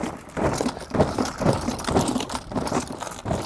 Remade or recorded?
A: recorded